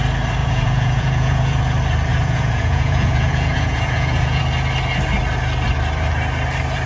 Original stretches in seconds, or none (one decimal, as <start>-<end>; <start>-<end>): 0.0-0.4; 1.6-2.1; 4.4-6.9

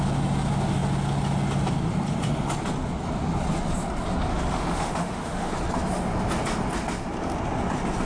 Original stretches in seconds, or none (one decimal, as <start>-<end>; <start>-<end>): 0.0-4.3; 5.5-8.1